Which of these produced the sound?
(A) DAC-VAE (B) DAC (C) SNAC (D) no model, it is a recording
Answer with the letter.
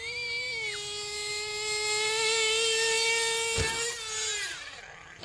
D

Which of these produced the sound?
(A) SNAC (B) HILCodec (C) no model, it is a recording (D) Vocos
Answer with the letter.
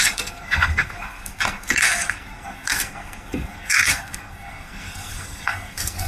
A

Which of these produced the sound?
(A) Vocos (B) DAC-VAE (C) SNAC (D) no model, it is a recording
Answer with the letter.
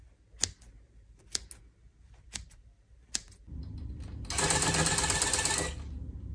D